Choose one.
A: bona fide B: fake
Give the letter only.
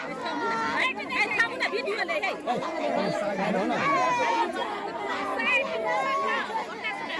A